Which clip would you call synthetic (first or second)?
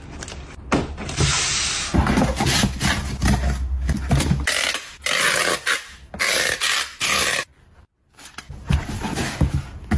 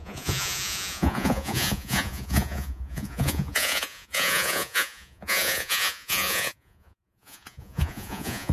second